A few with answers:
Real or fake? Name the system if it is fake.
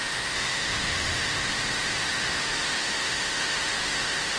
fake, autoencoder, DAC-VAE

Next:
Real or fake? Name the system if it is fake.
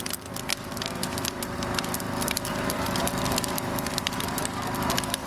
fake, vocoder, BigVGAN v2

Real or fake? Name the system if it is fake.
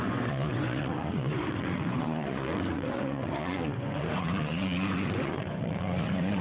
fake, vocoder, Vocos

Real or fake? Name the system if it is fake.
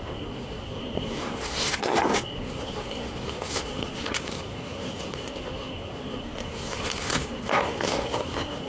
fake, codec, SNAC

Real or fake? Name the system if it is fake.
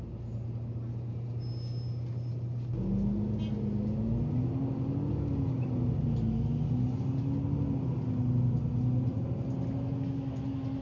real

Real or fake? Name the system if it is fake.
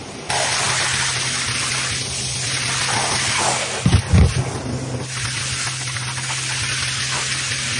real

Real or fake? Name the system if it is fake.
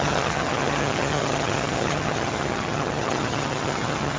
fake, vocoder, HiFi-GAN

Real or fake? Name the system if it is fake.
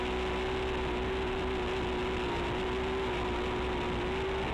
real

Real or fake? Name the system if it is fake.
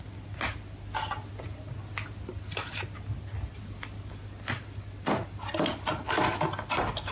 real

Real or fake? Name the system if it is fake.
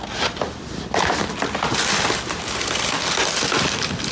real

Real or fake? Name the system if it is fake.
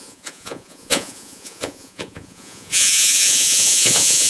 fake, vocoder, Vocos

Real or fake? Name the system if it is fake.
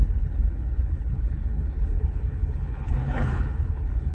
fake, codec, HILCodec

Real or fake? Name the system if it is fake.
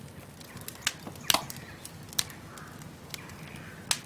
real